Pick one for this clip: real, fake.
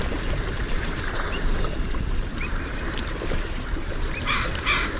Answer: fake